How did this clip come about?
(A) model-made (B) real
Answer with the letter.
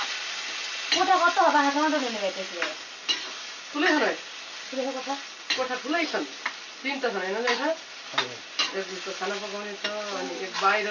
B